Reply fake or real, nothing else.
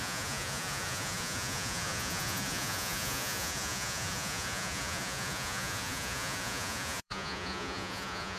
fake